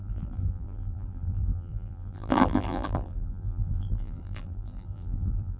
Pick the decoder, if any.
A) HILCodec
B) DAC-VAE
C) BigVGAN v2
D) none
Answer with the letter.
C